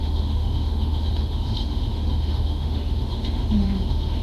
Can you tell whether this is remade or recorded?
remade